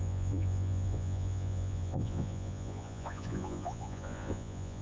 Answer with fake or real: fake